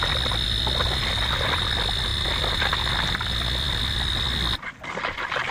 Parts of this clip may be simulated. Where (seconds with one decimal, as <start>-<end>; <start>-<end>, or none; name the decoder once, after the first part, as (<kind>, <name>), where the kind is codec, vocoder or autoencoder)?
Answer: none